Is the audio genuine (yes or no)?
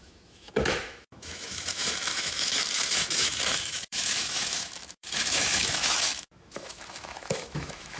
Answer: no